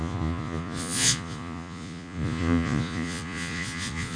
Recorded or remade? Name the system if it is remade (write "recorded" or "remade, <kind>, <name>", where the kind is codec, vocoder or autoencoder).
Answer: remade, vocoder, Vocos